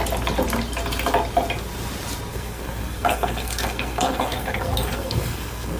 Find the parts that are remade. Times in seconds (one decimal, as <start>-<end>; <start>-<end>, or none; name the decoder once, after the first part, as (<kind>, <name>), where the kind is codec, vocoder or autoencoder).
2.3-5.8 (codec, SNAC)